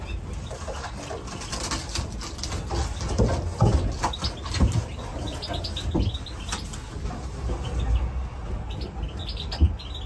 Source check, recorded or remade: recorded